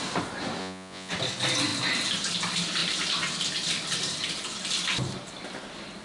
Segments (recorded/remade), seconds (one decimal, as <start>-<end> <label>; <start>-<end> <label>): 0.0-0.6 recorded; 0.6-1.1 remade; 1.1-6.0 recorded

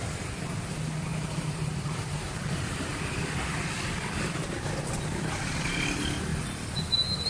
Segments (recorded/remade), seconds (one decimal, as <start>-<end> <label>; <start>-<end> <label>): 0.0-1.1 recorded; 1.1-2.9 remade; 2.9-7.3 recorded

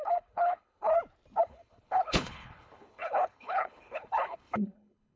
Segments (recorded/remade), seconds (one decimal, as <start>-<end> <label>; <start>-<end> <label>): 0.0-0.9 remade; 0.9-1.4 recorded; 1.4-5.2 remade

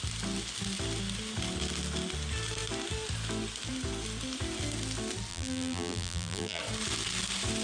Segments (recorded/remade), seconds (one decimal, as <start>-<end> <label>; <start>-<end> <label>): 0.0-5.3 recorded; 5.3-6.6 remade; 6.6-7.6 recorded

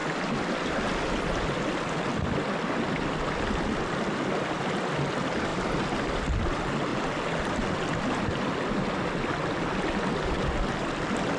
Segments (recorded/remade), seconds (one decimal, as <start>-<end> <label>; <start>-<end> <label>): 0.0-11.4 recorded

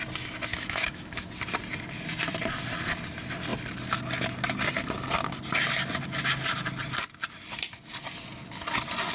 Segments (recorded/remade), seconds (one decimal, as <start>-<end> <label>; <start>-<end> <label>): 0.0-0.5 recorded; 0.5-1.3 remade; 1.3-9.1 recorded